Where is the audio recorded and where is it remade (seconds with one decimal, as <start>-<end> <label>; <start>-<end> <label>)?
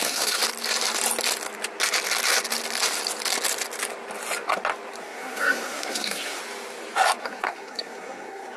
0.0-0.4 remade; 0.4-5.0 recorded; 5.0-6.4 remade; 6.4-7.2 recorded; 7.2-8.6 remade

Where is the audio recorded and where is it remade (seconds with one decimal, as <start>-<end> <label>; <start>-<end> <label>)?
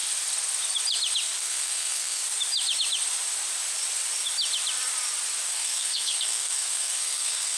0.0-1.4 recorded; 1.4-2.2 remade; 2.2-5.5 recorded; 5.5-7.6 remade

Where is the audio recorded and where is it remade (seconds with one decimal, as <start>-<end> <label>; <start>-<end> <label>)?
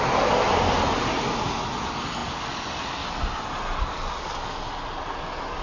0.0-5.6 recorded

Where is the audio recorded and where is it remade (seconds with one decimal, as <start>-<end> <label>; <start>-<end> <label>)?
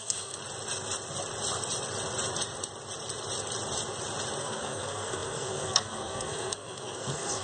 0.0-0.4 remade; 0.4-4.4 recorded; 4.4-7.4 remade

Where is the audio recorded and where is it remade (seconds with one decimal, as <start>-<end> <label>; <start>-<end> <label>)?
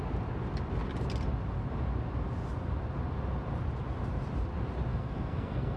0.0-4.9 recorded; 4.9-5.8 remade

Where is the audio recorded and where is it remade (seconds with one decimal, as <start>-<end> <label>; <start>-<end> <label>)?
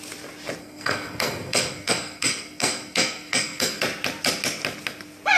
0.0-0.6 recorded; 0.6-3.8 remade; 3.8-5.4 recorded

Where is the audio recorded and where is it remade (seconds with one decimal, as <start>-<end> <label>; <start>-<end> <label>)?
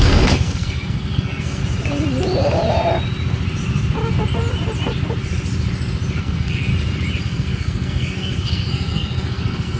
0.0-1.6 remade; 1.6-6.2 recorded; 6.2-6.7 remade; 6.7-7.2 recorded; 7.2-9.8 remade